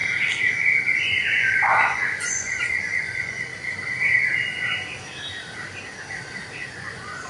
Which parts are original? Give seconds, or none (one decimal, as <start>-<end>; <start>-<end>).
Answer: 0.0-1.0; 3.5-6.7